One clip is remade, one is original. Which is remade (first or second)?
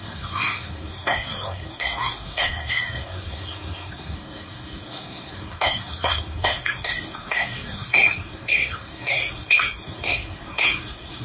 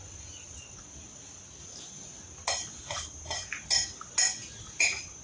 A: first